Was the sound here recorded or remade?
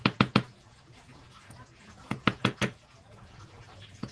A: remade